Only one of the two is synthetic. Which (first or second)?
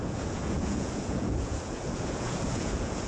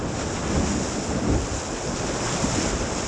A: first